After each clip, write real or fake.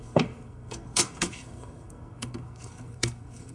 fake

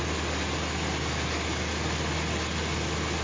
real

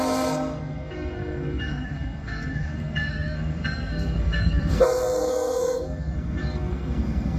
fake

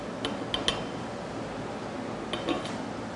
real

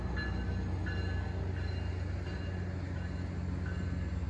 real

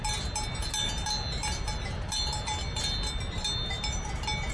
real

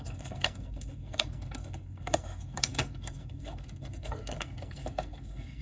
fake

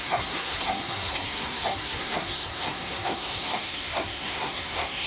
fake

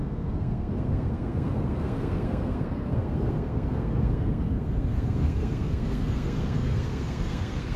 fake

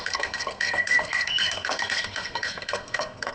fake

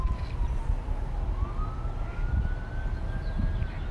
real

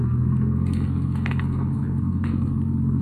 fake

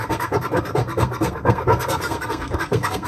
fake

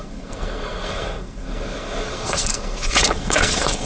fake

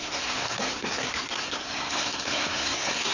fake